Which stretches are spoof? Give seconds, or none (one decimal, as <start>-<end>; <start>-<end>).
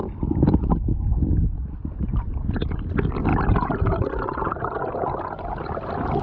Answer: none